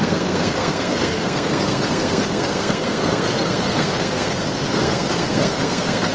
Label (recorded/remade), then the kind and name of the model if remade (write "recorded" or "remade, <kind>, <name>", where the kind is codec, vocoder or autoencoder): remade, codec, SNAC